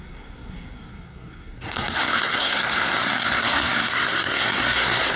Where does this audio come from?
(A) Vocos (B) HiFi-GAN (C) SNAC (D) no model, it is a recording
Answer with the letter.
C